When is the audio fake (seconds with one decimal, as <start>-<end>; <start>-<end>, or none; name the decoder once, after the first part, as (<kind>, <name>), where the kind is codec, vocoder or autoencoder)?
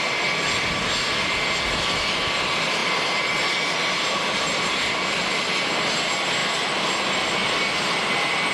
2.8-5.4 (vocoder, BigVGAN v2); 6.4-7.0; 7.4-8.5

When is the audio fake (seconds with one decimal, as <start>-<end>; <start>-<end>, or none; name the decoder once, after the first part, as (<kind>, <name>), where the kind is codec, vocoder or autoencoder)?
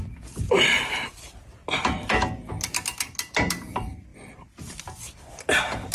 0.0-1.6 (vocoder, BigVGAN v2); 2.5-5.9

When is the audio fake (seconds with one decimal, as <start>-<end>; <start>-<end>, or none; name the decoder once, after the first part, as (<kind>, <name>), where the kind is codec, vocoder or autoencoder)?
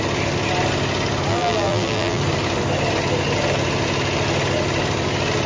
1.3-2.2 (vocoder, BigVGAN v2)